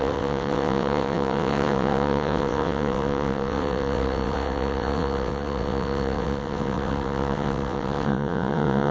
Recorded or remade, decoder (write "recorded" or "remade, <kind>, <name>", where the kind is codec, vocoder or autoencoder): remade, vocoder, WaveNeXt